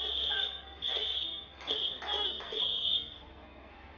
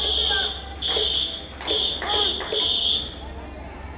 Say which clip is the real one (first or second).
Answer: second